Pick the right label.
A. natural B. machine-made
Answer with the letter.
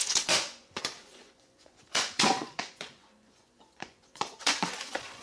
B